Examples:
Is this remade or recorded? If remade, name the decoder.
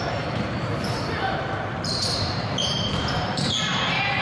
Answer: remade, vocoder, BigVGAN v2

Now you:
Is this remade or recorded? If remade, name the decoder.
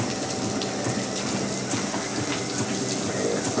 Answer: recorded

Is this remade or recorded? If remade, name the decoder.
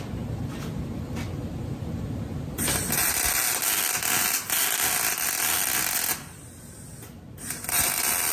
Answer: recorded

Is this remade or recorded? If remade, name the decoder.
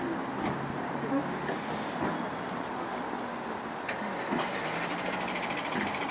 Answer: recorded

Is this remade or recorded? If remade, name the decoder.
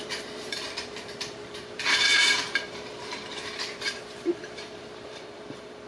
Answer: remade, vocoder, BigVGAN v2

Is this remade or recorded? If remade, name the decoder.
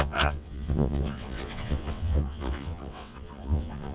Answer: remade, vocoder, WaveNeXt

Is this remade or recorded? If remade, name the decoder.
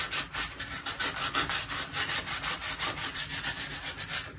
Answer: recorded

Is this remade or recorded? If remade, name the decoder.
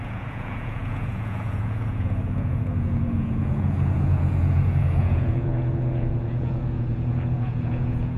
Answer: remade, vocoder, Vocos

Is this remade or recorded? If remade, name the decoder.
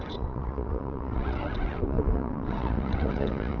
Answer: remade, vocoder, WaveNeXt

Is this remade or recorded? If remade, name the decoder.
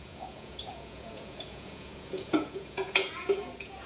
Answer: remade, vocoder, Vocos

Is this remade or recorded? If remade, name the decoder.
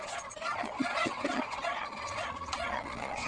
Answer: remade, vocoder, Vocos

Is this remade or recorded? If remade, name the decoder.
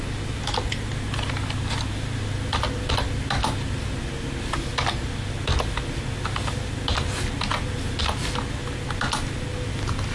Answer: recorded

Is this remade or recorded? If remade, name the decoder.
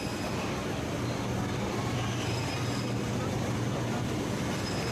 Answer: recorded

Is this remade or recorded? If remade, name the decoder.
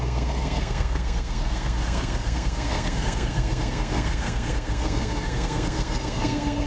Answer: remade, codec, SNAC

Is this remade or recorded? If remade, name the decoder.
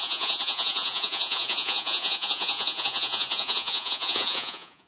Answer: remade, vocoder, Vocos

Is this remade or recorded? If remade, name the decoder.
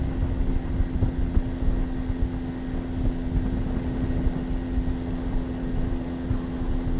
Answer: recorded